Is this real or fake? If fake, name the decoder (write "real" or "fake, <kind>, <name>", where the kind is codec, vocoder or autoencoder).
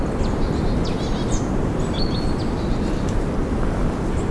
real